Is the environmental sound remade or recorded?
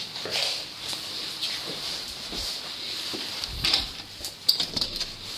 recorded